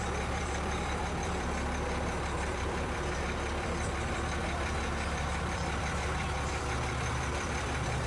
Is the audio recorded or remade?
remade